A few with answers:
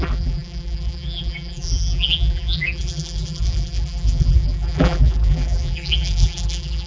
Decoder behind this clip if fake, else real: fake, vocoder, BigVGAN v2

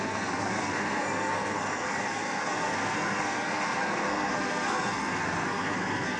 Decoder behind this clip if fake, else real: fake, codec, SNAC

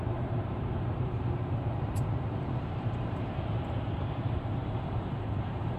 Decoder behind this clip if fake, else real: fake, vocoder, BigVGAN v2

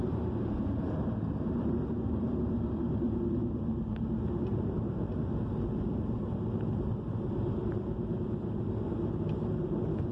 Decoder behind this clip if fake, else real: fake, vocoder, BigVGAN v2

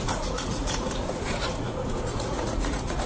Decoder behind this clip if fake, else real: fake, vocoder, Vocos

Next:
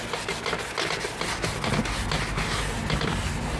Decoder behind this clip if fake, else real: real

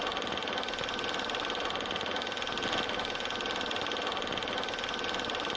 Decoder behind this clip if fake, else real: real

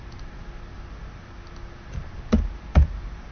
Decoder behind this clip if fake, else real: real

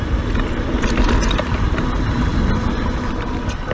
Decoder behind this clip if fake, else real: real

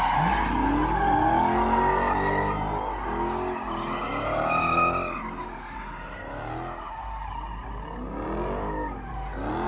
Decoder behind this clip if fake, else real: real